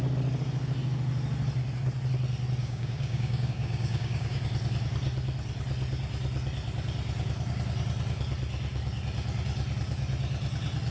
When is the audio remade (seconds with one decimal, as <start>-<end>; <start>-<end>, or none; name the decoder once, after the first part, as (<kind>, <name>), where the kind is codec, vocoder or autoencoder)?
2.6-4.4 (codec, DAC)